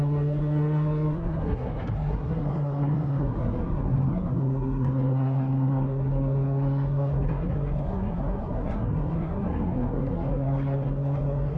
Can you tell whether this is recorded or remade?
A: remade